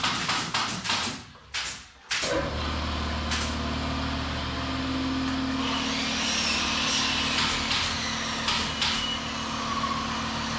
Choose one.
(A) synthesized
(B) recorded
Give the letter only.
B